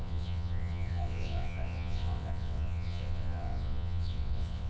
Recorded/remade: remade